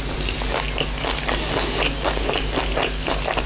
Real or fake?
real